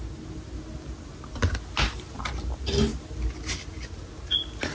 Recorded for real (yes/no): yes